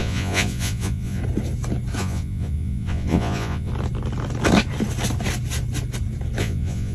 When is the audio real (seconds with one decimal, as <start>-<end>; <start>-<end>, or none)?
1.2-2.0; 3.7-6.4